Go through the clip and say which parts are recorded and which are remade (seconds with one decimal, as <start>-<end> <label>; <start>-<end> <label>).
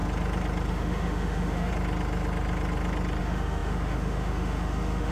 0.0-0.7 recorded; 0.7-1.7 remade; 1.7-3.2 recorded; 3.2-5.1 remade